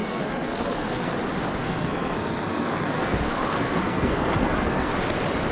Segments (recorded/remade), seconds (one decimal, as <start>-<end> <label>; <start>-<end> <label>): 0.0-1.1 remade; 1.1-1.6 recorded; 1.6-4.9 remade; 4.9-5.5 recorded

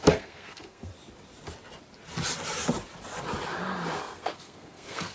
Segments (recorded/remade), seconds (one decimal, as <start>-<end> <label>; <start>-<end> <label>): 0.0-0.9 remade; 0.9-4.0 recorded; 4.0-5.1 remade

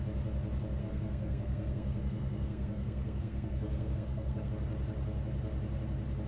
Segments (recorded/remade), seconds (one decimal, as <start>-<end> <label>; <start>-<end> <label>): 0.0-0.8 recorded; 0.8-4.5 remade; 4.5-6.3 recorded